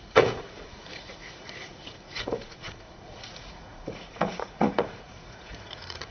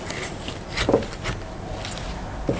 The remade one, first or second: first